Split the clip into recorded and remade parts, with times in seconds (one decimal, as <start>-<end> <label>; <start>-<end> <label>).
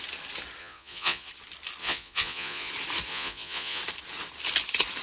0.0-0.6 recorded; 0.6-1.3 remade; 1.3-1.8 recorded; 1.8-2.7 remade; 2.7-3.1 recorded; 3.1-3.8 remade; 3.8-5.0 recorded